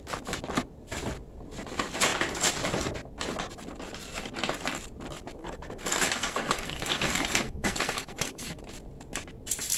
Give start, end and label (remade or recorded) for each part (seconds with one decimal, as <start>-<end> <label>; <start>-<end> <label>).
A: 0.0-5.4 recorded; 5.4-8.6 remade; 8.6-9.8 recorded